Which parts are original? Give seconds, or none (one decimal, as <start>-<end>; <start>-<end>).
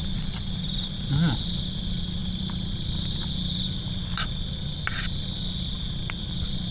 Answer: 0.0-6.7